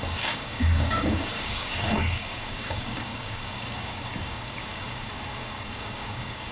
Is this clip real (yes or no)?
no